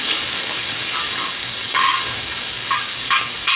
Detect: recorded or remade remade